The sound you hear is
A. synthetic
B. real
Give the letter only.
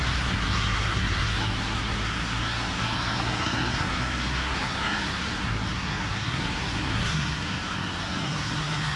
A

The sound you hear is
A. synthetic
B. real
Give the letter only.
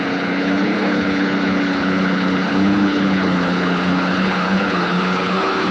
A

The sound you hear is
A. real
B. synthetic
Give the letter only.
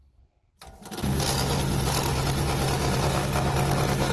A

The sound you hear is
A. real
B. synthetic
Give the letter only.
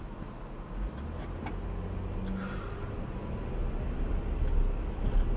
A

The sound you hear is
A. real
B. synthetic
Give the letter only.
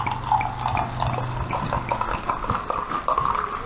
A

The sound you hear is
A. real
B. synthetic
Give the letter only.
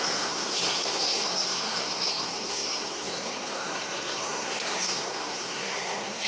B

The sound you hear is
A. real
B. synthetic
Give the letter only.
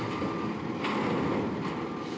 A